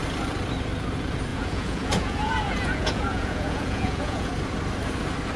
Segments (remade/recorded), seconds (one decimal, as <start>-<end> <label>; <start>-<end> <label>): 0.0-1.3 recorded; 1.3-4.3 remade; 4.3-5.4 recorded